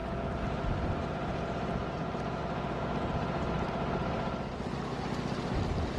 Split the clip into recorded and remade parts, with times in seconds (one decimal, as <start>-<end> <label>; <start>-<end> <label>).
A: 0.0-6.0 recorded

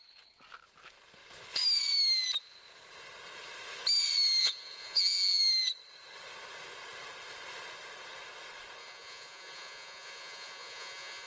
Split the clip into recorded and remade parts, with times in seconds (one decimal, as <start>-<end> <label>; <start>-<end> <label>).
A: 0.0-4.4 recorded; 4.4-5.4 remade; 5.4-8.8 recorded; 8.8-11.3 remade

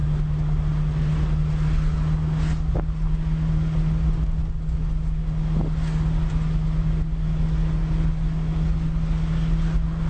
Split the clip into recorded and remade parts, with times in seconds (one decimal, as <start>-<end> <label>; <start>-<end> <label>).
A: 0.0-10.1 recorded